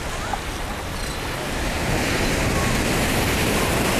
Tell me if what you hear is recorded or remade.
recorded